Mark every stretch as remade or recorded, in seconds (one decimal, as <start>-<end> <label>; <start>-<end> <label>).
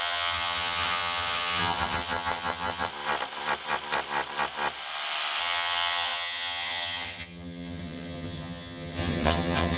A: 0.0-2.9 remade; 2.9-5.4 recorded; 5.4-9.8 remade